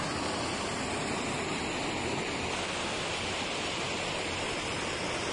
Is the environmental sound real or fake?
real